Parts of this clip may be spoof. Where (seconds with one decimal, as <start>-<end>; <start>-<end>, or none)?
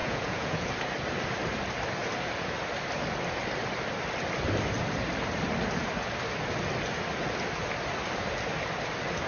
0.0-0.7